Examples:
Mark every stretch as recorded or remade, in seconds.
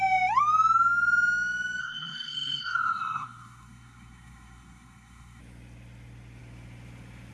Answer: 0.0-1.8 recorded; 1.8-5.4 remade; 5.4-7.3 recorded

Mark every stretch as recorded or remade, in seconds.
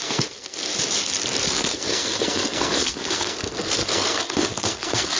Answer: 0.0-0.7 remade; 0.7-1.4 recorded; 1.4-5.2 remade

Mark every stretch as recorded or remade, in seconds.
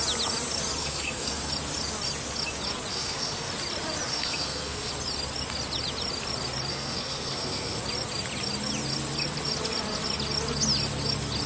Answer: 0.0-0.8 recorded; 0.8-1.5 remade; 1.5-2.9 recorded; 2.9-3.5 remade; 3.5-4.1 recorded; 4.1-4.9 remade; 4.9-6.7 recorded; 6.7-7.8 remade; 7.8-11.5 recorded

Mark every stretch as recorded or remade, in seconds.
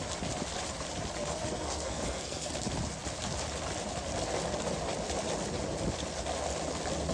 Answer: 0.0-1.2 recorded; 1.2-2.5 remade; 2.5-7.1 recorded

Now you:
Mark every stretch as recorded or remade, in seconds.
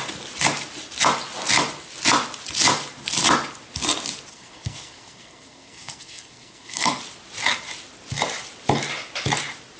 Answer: 0.0-4.3 recorded; 4.3-7.0 remade; 7.0-9.8 recorded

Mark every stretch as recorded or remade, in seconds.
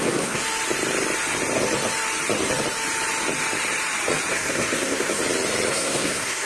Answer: 0.0-0.4 remade; 0.4-4.3 recorded; 4.3-5.2 remade; 5.2-5.7 recorded; 5.7-6.5 remade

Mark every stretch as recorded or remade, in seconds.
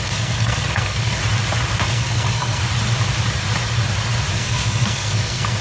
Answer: 0.0-1.2 remade; 1.2-1.8 recorded; 1.8-2.6 remade; 2.6-4.3 recorded; 4.3-5.6 remade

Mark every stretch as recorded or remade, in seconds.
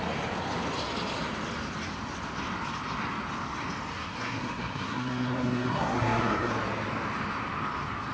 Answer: 0.0-3.9 recorded; 3.9-6.5 remade; 6.5-8.1 recorded